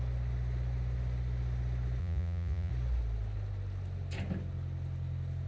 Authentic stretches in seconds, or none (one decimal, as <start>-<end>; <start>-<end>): 0.0-2.0; 2.7-5.5